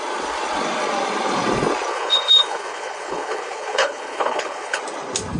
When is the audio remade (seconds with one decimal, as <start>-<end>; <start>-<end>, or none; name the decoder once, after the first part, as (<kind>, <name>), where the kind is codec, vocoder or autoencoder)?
1.9-4.8 (codec, HILCodec)